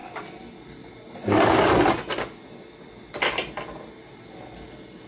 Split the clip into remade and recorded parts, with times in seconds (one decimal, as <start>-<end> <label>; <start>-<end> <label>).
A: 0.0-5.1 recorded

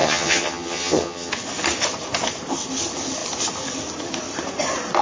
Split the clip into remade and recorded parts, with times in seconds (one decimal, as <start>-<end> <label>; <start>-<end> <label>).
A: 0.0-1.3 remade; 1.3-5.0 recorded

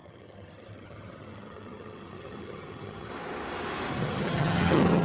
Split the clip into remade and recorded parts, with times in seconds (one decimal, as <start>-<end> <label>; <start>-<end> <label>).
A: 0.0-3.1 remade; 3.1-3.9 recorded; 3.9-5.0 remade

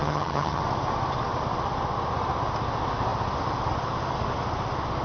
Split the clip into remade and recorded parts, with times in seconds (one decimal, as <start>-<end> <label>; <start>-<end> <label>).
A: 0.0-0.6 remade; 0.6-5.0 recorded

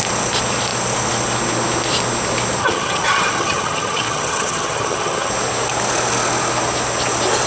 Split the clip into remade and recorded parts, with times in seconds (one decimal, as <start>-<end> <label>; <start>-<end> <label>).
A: 0.0-2.6 recorded; 2.6-5.3 remade; 5.3-7.5 recorded